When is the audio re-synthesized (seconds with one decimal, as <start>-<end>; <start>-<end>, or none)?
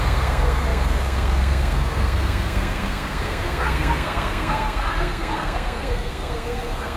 0.0-7.0